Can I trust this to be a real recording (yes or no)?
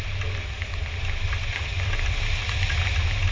yes